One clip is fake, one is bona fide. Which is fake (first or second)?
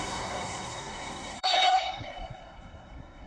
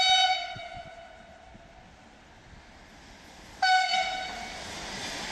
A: first